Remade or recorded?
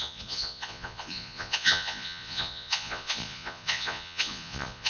remade